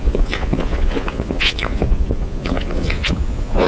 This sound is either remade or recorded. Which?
remade